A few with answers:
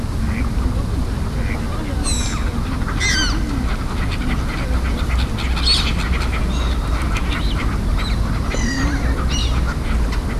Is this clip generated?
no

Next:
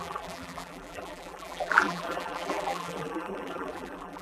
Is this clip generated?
yes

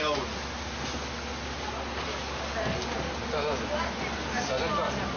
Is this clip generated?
no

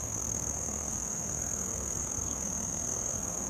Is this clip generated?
yes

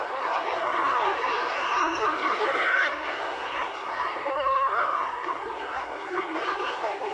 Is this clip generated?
yes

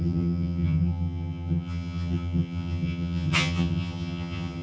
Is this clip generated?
yes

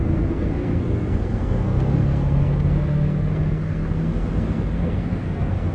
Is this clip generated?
yes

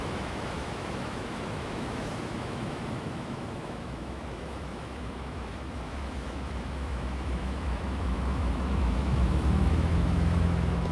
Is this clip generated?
yes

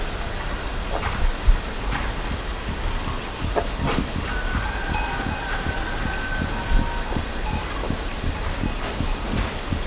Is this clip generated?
no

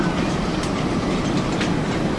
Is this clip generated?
no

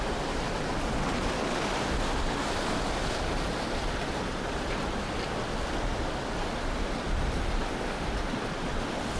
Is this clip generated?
no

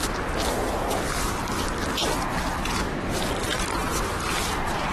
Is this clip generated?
no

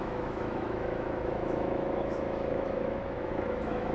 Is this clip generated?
yes